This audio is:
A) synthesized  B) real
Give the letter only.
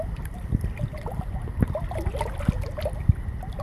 B